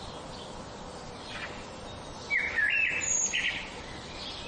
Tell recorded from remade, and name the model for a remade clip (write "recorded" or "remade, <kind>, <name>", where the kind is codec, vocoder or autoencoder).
recorded